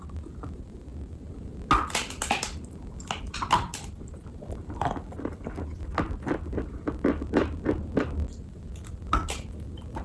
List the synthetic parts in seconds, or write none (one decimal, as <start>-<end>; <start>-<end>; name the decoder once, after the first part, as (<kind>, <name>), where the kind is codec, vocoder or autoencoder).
none